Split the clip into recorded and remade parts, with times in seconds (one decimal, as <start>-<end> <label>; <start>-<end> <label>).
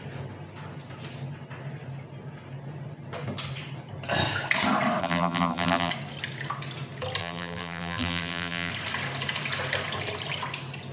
0.0-5.0 recorded; 5.0-5.9 remade; 5.9-7.2 recorded; 7.2-8.7 remade; 8.7-10.9 recorded